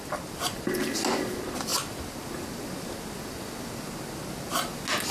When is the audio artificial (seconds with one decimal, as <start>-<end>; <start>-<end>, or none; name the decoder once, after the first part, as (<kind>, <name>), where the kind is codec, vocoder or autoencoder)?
none